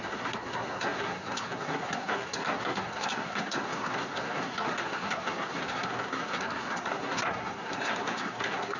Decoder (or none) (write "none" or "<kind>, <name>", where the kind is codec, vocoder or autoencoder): codec, SNAC